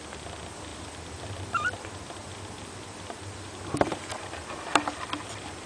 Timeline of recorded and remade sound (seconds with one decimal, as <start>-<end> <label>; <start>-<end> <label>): 0.0-0.7 recorded; 0.7-4.1 remade; 4.1-5.7 recorded

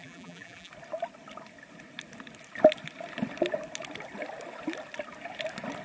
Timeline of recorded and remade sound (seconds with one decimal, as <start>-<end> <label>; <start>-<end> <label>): 0.0-0.7 remade; 0.7-5.8 recorded

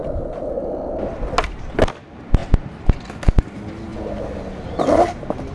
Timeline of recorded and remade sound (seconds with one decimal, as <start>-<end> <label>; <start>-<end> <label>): 0.0-5.5 recorded

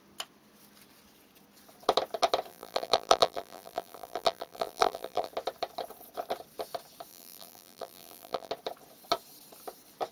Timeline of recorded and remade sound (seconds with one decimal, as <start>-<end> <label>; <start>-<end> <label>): 0.0-2.5 recorded; 2.5-5.3 remade; 5.3-7.1 recorded; 7.1-8.5 remade; 8.5-10.1 recorded

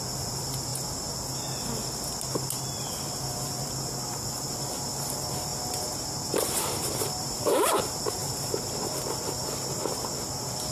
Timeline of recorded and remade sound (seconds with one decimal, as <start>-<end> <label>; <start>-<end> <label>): 0.0-0.7 remade; 0.7-2.8 recorded; 2.8-5.5 remade; 5.5-6.4 recorded; 6.4-10.7 remade

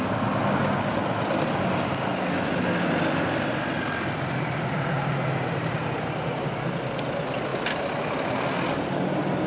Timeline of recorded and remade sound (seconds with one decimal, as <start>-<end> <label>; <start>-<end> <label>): 0.0-9.5 recorded